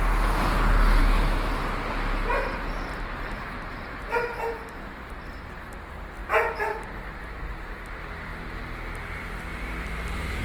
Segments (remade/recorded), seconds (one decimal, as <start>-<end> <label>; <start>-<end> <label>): 0.0-1.0 recorded; 1.0-1.5 remade; 1.5-10.4 recorded